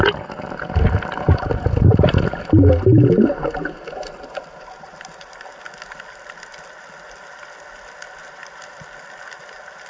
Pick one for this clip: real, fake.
real